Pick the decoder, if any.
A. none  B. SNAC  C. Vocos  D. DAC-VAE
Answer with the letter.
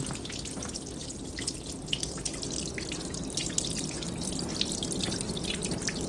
A